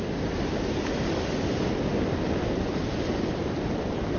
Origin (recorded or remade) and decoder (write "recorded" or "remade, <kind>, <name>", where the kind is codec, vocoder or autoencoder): recorded